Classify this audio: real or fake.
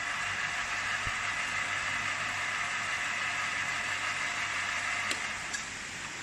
real